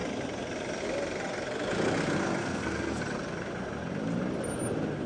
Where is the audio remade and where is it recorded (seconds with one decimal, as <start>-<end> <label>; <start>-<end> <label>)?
0.0-2.4 recorded; 2.4-3.0 remade; 3.0-5.1 recorded